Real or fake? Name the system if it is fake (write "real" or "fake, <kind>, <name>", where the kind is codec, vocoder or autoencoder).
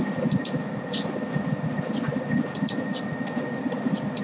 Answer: real